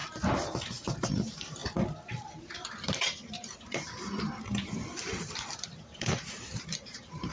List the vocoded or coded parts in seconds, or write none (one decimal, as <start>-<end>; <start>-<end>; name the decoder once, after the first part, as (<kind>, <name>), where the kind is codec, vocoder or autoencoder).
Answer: 0.6-1.6 (vocoder, BigVGAN v2); 2.4-7.3